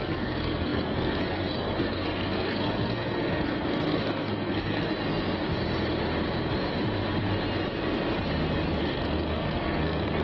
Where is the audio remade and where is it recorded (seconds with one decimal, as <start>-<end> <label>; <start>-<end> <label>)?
0.0-4.9 remade; 4.9-8.8 recorded; 8.8-10.2 remade